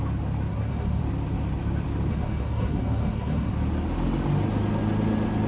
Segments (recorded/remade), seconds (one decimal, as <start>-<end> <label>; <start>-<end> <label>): 0.0-0.5 recorded; 0.5-1.0 remade; 1.0-2.1 recorded; 2.1-3.5 remade; 3.5-5.5 recorded